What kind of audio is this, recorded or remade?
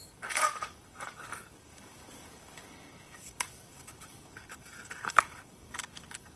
remade